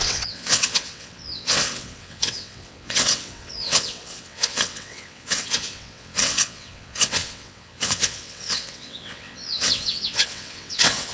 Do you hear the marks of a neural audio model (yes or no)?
yes